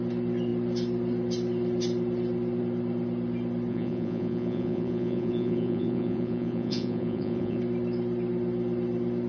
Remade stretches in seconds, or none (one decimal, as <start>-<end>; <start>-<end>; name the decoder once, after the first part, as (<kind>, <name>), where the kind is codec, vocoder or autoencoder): 3.7-7.6 (vocoder, Vocos)